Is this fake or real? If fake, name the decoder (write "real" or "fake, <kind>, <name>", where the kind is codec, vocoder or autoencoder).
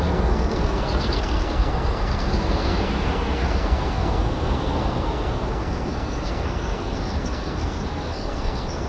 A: fake, codec, SNAC